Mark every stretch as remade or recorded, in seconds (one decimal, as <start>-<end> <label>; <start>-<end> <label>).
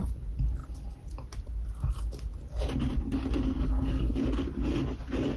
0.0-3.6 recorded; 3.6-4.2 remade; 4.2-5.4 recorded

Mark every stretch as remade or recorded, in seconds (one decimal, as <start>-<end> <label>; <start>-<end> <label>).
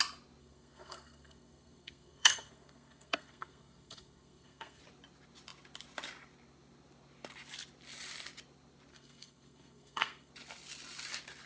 0.0-0.4 recorded; 0.4-4.8 remade; 4.8-8.9 recorded; 8.9-10.3 remade; 10.3-11.5 recorded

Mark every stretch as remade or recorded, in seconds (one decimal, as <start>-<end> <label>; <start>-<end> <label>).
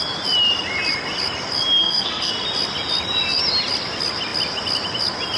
0.0-1.8 recorded; 1.8-2.3 remade; 2.3-5.4 recorded